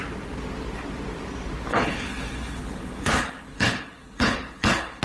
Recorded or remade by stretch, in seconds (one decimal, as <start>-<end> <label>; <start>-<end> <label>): 0.0-1.7 recorded; 1.7-5.0 remade